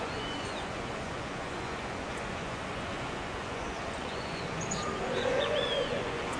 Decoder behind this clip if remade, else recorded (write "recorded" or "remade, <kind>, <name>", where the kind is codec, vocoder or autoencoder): remade, vocoder, Vocos